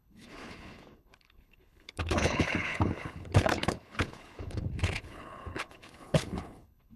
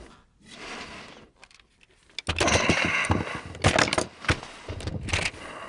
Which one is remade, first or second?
first